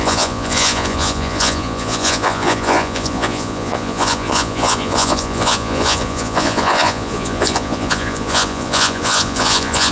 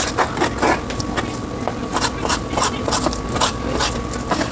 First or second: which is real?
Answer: second